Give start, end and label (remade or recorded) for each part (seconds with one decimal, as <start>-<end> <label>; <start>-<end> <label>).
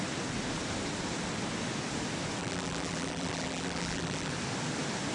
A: 0.0-2.4 recorded; 2.4-4.3 remade; 4.3-5.1 recorded